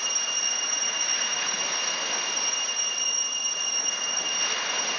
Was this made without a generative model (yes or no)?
yes